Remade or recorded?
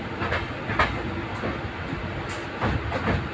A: recorded